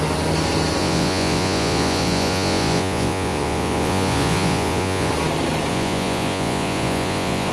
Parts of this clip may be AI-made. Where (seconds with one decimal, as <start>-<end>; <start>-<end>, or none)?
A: 0.8-5.1; 5.7-7.5